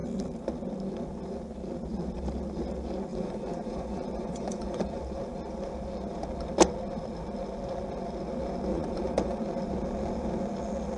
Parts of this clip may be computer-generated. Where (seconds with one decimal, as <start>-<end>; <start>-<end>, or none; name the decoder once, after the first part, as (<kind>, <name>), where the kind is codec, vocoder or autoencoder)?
3.1-5.0 (vocoder, Vocos); 8.7-9.4